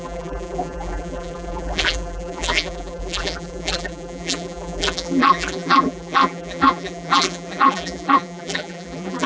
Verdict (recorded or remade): remade